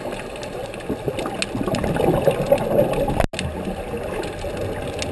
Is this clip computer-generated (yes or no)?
no